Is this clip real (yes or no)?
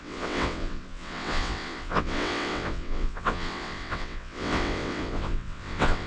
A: no